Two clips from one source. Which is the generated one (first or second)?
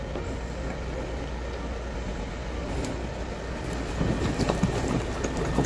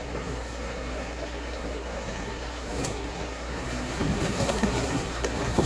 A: second